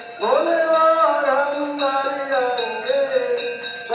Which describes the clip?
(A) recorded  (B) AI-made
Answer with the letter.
A